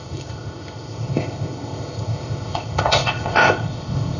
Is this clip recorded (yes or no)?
no